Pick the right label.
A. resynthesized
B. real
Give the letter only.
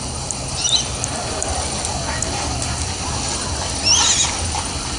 B